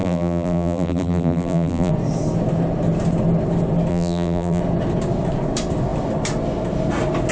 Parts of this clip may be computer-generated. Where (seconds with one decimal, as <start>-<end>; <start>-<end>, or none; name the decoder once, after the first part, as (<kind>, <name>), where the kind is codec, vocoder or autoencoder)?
0.0-1.9 (vocoder, BigVGAN v2); 3.9-4.6